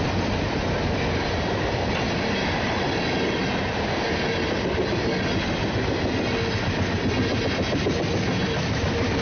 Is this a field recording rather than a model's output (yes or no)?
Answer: yes